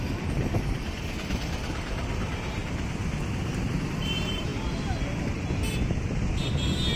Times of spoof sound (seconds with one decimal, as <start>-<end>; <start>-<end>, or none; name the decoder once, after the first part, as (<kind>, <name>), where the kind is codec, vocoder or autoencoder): 0.0-2.6 (vocoder, BigVGAN v2); 3.9-4.5